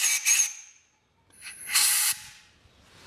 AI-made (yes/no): no